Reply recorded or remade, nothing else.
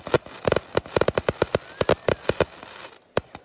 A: recorded